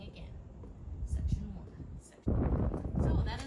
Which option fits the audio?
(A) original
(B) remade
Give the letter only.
A